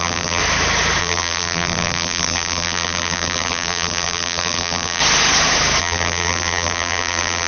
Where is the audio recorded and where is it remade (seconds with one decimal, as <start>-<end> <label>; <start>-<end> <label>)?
0.0-0.4 remade; 0.4-1.0 recorded; 1.0-5.0 remade; 5.0-5.8 recorded; 5.8-7.5 remade